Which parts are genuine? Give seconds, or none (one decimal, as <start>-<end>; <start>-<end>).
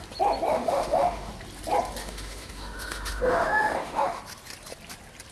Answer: 0.0-0.5; 1.3-2.0; 4.2-5.3